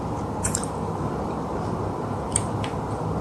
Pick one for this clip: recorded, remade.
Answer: remade